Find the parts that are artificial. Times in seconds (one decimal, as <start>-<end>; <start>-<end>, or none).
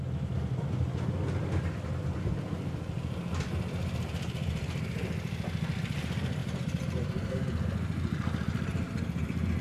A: 6.4-7.3